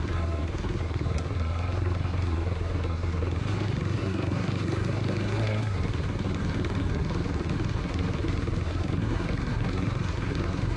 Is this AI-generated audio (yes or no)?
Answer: yes